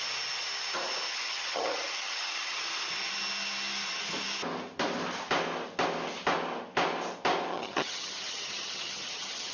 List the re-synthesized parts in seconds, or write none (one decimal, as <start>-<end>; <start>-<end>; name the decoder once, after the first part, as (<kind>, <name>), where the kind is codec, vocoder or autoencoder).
1.1-2.6 (vocoder, HiFi-GAN); 7.5-9.5